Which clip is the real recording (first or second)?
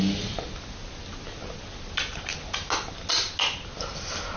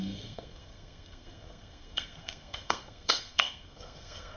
first